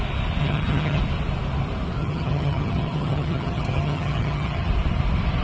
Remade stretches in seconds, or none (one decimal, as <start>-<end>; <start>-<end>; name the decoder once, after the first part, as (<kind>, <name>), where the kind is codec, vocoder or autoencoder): 0.4-1.0 (vocoder, HiFi-GAN); 2.0-4.7